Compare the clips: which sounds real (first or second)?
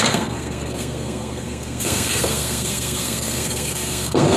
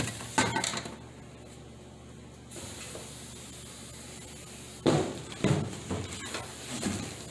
second